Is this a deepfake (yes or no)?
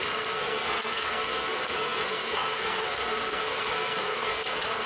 yes